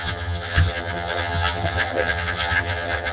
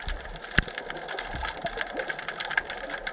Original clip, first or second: second